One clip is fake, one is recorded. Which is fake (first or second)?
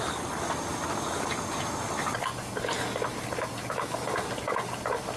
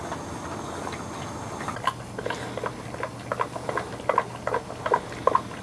first